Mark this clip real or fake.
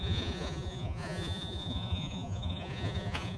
fake